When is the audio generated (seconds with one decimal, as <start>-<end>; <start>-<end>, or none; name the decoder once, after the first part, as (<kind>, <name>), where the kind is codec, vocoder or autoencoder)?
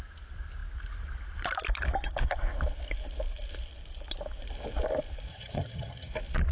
5.3-6.1 (vocoder, HiFi-GAN)